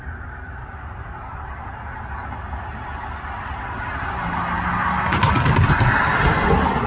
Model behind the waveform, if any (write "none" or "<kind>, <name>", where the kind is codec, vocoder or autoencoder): none